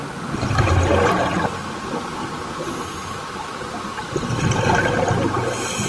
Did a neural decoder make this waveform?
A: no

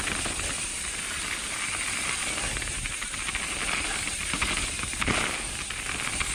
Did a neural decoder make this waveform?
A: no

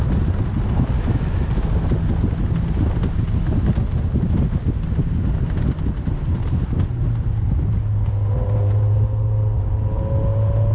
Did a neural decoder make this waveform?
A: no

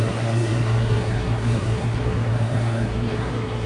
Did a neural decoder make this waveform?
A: yes